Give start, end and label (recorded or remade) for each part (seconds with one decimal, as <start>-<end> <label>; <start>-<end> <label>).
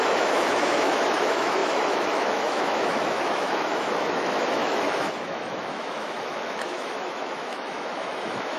0.0-8.6 remade